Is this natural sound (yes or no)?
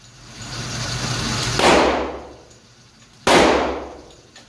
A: yes